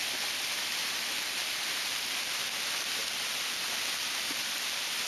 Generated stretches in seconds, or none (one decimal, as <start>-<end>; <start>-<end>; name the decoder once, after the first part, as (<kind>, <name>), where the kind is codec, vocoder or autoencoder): 3.0-4.3 (vocoder, BigVGAN v2)